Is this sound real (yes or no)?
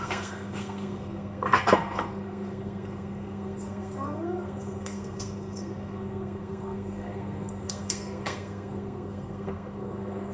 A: no